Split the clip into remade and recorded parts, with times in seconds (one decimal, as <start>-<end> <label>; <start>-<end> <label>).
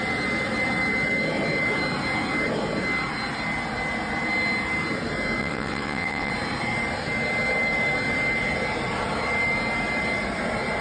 0.0-5.4 recorded; 5.4-6.3 remade; 6.3-10.8 recorded